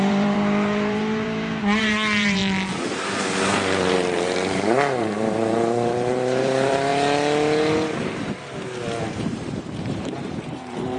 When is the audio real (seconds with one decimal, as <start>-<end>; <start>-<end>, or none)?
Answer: 2.4-3.9; 6.9-9.0